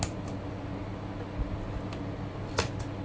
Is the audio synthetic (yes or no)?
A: no